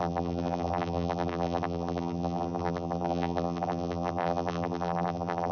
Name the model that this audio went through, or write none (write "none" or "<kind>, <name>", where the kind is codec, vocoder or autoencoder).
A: vocoder, BigVGAN v2